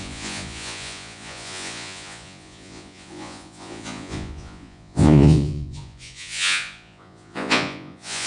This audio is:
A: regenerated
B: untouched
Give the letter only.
A